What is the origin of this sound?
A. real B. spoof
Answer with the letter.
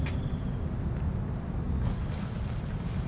A